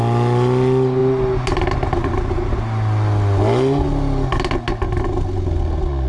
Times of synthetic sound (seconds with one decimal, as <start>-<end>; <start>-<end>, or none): none

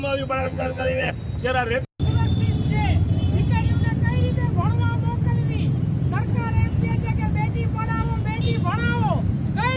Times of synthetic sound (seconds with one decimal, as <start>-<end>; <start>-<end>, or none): 0.4-1.1

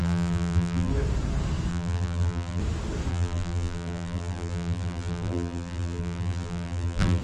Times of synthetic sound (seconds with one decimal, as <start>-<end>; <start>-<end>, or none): 0.0-0.9; 1.7-2.6; 3.1-7.2